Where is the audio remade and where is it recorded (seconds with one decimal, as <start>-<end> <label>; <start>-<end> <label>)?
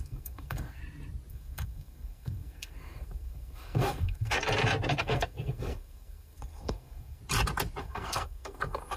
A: 0.0-0.8 remade; 0.8-1.3 recorded; 1.3-4.4 remade; 4.4-5.0 recorded; 5.0-7.2 remade; 7.2-7.8 recorded; 7.8-9.0 remade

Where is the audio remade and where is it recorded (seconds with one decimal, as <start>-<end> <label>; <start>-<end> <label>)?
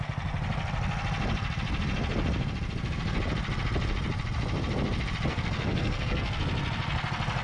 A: 0.0-5.3 recorded; 5.3-6.4 remade; 6.4-7.4 recorded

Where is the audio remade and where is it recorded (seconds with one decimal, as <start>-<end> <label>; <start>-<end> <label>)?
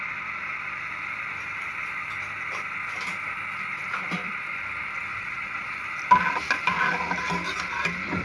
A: 0.0-5.1 recorded; 5.1-5.7 remade; 5.7-8.2 recorded